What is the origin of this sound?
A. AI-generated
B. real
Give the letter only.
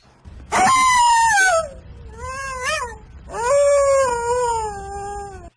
B